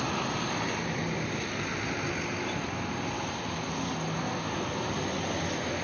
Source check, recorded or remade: recorded